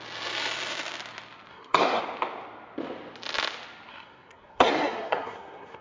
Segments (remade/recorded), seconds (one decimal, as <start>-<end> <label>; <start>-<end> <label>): 0.0-1.5 recorded; 1.5-2.0 remade; 2.0-3.9 recorded; 3.9-5.8 remade